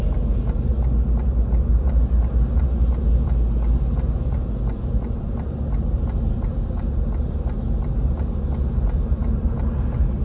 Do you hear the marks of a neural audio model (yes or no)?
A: no